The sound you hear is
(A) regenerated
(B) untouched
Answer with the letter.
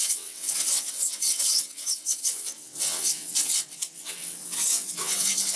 A